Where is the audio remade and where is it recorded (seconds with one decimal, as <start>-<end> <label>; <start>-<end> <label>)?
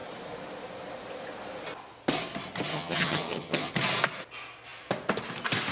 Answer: 0.0-2.7 recorded; 2.7-3.7 remade; 3.7-5.7 recorded